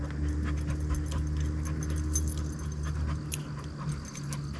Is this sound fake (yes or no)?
no